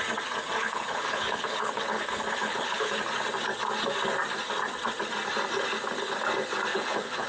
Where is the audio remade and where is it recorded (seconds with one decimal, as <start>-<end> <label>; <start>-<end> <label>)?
0.0-0.6 recorded; 0.6-3.0 remade; 3.0-6.7 recorded; 6.7-7.3 remade